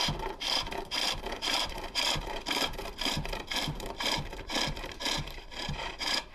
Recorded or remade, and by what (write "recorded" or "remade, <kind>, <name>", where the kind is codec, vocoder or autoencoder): remade, vocoder, BigVGAN v2